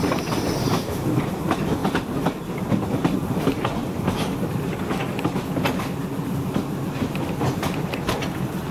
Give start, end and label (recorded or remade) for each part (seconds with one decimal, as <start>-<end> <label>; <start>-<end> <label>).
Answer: 0.0-0.7 recorded; 0.7-1.2 remade; 1.2-8.7 recorded

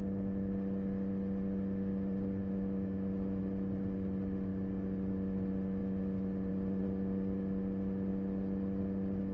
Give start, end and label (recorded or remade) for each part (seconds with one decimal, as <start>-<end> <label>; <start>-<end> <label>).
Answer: 0.0-2.4 recorded; 2.4-3.4 remade; 3.4-9.3 recorded

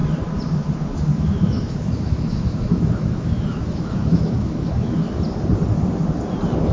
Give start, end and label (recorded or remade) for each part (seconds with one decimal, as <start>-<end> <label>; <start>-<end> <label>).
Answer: 0.0-1.1 recorded; 1.1-5.1 remade; 5.1-6.7 recorded

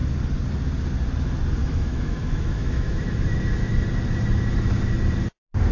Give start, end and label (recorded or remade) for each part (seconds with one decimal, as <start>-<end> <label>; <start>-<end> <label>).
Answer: 0.0-1.6 recorded; 1.6-3.7 remade; 3.7-5.7 recorded

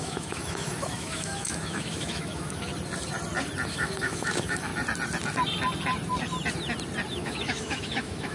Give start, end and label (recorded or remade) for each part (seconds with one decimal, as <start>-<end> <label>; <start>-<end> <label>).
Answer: 0.0-2.7 remade; 2.7-3.7 recorded; 3.7-4.7 remade; 4.7-7.1 recorded; 7.1-8.3 remade